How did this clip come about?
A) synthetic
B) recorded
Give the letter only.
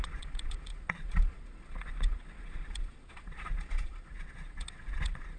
A